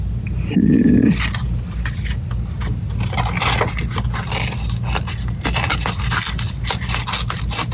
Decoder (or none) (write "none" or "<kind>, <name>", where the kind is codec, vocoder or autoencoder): none